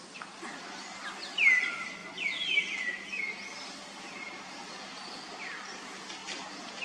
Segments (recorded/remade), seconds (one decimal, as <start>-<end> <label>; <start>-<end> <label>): 0.0-3.8 recorded; 3.8-5.1 remade; 5.1-6.8 recorded